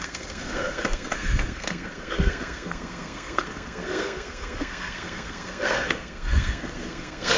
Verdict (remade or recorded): remade